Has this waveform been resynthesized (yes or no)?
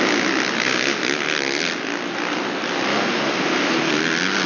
no